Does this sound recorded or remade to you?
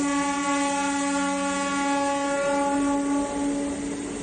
recorded